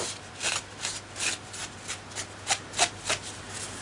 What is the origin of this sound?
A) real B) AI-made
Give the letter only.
A